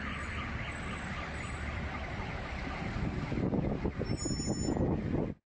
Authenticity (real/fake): real